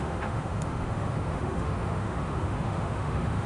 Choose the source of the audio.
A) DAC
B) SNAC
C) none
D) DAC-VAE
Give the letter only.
D